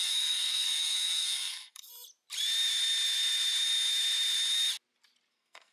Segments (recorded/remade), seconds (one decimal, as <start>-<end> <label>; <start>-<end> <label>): 0.0-1.9 remade; 1.9-5.3 recorded; 5.3-5.7 remade